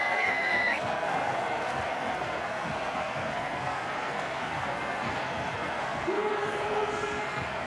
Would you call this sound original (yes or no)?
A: no